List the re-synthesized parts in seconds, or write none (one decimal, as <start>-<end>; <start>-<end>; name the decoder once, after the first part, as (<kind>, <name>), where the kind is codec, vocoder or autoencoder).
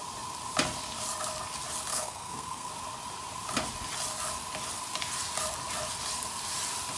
1.9-2.7 (codec, SNAC)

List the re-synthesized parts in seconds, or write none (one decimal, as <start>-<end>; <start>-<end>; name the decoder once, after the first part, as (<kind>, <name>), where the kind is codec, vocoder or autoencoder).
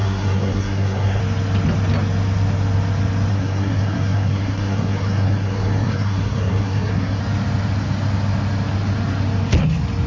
0.0-1.2 (codec, SNAC); 3.3-7.2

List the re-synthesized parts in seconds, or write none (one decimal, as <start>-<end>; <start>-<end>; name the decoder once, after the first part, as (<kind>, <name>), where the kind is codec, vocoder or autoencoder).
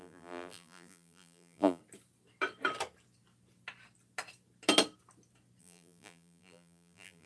0.0-1.8 (vocoder, BigVGAN v2); 5.6-7.3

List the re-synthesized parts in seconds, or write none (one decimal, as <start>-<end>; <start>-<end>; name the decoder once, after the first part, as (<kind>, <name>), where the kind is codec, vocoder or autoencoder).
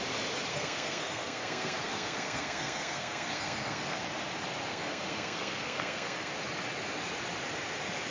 0.5-4.0 (codec, SNAC); 4.7-6.3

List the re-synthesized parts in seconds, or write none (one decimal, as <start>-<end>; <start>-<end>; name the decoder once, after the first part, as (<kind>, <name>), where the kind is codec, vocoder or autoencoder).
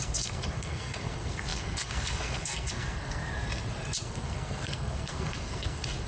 0.0-3.2 (codec, SNAC); 4.0-6.1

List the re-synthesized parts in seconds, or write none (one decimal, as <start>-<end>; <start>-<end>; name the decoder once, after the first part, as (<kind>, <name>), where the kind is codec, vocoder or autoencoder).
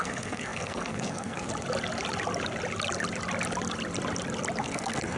0.0-1.5 (codec, SNAC); 4.6-5.2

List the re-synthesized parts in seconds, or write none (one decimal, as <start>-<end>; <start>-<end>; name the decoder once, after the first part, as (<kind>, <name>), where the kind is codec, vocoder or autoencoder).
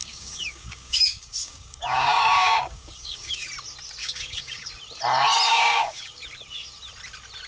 0.0-3.5 (codec, DAC); 4.0-4.7; 5.5-6.2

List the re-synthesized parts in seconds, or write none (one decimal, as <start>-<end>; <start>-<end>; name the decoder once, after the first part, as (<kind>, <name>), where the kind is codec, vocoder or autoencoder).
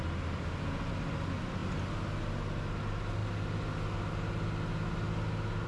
none